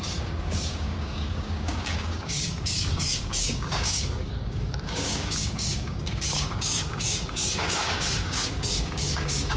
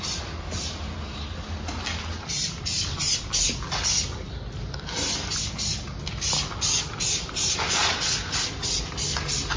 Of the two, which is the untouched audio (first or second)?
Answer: second